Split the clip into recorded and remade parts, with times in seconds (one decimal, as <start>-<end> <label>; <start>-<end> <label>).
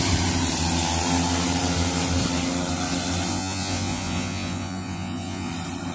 0.0-3.3 recorded; 3.3-5.5 remade; 5.5-5.9 recorded